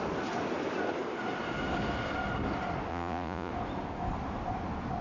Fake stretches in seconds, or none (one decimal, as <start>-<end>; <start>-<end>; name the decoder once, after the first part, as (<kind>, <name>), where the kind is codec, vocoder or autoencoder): 2.9-3.5 (vocoder, Vocos)